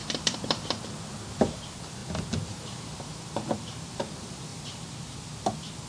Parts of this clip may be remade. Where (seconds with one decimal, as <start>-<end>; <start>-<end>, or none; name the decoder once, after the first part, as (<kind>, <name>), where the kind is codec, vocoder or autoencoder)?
0.0-0.7 (vocoder, BigVGAN v2); 2.0-4.1; 4.5-5.1